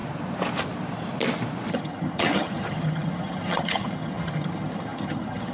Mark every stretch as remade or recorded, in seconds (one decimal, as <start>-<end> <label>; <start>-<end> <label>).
0.0-1.7 recorded; 1.7-5.5 remade